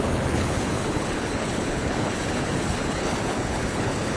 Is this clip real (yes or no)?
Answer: no